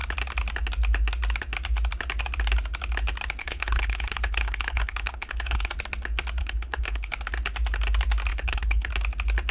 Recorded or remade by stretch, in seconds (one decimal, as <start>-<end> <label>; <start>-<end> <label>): 0.0-3.4 recorded; 3.4-5.7 remade; 5.7-6.4 recorded; 6.4-7.1 remade; 7.1-8.3 recorded; 8.3-8.9 remade; 8.9-9.5 recorded